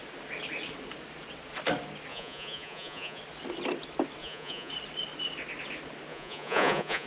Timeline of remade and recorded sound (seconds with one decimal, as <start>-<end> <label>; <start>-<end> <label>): 0.0-2.1 recorded; 2.1-3.2 remade; 3.2-4.2 recorded; 4.2-4.7 remade; 4.7-6.1 recorded; 6.1-7.1 remade